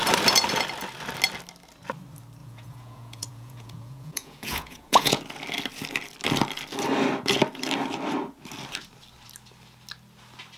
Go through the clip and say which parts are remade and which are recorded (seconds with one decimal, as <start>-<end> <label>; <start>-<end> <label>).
0.0-2.4 recorded; 2.4-5.2 remade; 5.2-10.6 recorded